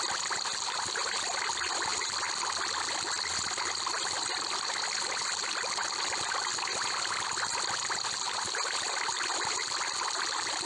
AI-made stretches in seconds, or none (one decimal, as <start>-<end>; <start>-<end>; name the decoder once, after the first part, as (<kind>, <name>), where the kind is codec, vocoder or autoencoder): none